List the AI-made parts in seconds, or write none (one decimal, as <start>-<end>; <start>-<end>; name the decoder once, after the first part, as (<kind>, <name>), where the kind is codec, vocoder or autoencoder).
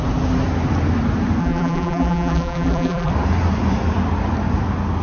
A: 1.4-3.1 (vocoder, BigVGAN v2)